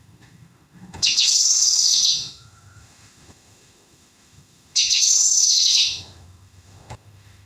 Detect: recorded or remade remade